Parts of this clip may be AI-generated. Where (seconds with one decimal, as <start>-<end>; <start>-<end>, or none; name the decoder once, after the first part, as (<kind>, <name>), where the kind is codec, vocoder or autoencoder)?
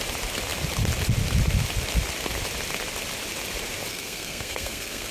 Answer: 3.9-5.1 (codec, SNAC)